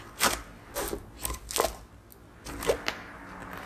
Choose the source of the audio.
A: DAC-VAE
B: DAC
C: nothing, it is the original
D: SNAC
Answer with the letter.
C